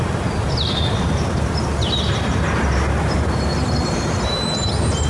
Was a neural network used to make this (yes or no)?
no